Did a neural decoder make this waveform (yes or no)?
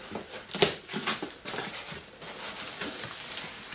no